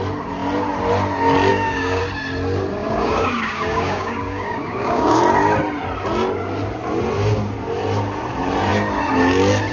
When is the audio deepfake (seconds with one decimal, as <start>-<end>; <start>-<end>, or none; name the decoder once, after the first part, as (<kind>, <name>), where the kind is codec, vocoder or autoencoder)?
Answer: 1.5-2.0 (codec, DAC); 2.8-5.2